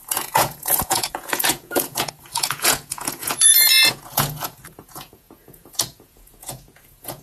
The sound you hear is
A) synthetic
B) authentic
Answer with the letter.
A